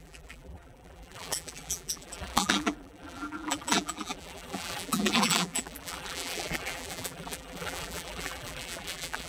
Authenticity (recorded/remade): remade